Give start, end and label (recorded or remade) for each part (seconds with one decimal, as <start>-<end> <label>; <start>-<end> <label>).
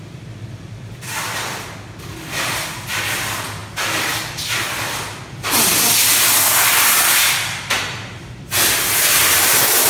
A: 0.0-9.9 recorded